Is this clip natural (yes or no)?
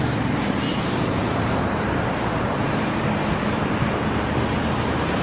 no